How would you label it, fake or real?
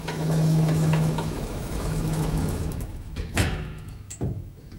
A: fake